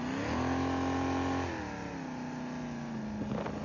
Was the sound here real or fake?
real